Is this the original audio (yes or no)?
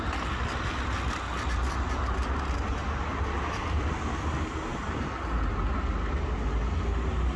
yes